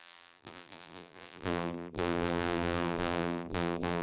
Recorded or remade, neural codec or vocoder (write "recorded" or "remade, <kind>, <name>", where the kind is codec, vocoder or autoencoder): remade, vocoder, BigVGAN v2